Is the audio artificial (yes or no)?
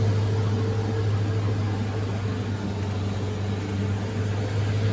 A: no